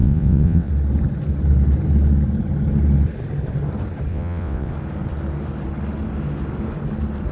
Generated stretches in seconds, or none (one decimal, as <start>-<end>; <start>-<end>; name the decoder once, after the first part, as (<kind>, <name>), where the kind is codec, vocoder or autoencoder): 0.0-0.7 (vocoder, WaveNeXt); 4.1-4.7